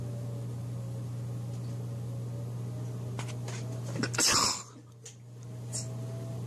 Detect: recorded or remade recorded